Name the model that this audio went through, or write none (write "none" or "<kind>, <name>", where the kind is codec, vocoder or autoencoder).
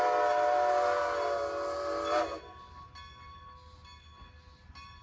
none